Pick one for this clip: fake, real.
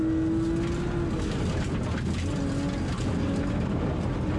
real